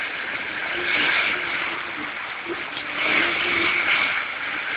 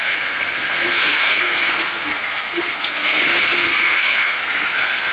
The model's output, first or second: second